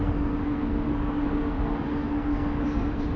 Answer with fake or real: fake